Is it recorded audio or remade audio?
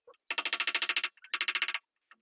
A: recorded